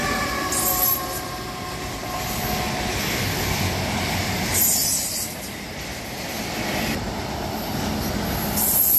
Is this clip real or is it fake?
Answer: real